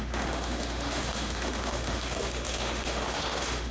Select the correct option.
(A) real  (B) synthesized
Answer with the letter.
B